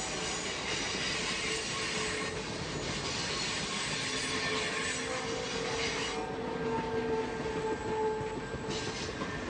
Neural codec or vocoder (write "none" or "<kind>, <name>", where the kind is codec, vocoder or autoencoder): none